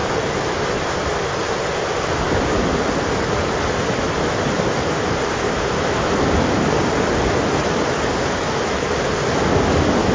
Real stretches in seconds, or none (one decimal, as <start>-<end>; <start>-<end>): 0.0-10.1